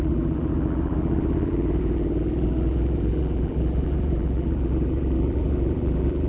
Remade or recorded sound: remade